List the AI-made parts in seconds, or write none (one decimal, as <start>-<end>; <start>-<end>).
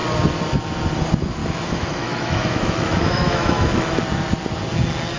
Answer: 1.4-4.0